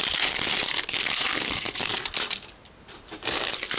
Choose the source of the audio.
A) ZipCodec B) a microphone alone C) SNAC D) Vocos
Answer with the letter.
B